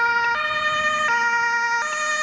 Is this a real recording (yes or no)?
yes